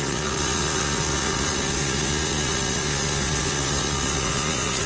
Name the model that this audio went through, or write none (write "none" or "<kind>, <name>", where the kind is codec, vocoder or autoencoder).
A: vocoder, Vocos